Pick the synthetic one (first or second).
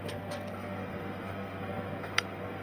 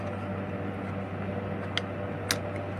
first